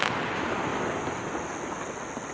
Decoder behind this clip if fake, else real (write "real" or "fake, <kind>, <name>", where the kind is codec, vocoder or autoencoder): real